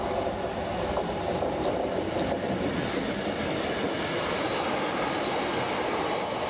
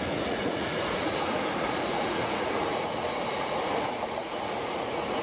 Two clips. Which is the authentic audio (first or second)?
first